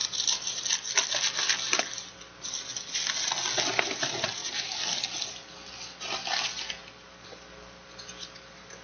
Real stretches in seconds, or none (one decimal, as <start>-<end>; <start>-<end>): 0.6-8.8